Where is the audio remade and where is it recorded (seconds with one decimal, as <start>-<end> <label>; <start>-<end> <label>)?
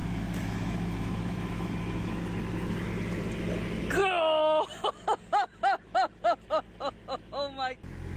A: 0.0-2.0 remade; 2.0-8.2 recorded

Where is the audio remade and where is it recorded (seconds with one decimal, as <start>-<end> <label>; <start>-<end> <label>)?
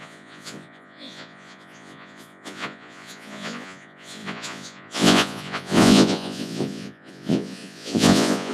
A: 0.0-8.5 remade